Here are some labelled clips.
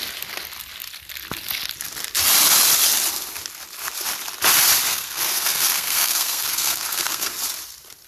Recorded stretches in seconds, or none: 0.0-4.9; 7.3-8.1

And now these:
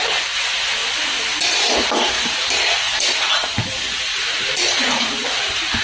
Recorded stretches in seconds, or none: 0.0-5.8